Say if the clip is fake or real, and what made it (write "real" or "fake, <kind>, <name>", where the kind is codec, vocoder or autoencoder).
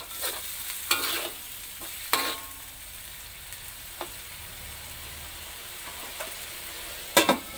fake, vocoder, BigVGAN v2